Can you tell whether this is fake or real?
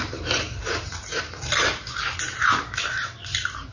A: fake